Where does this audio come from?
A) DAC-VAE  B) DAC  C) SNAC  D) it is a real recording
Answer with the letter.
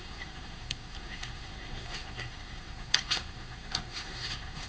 C